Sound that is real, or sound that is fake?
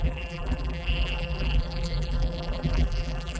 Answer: fake